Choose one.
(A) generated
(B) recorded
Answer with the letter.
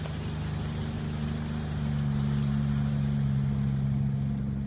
B